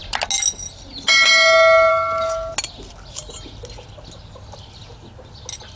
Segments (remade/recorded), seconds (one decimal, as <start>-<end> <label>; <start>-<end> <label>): 0.0-1.9 recorded; 1.9-2.5 remade; 2.5-5.8 recorded